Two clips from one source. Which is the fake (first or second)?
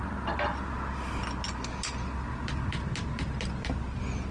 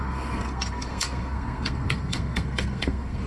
second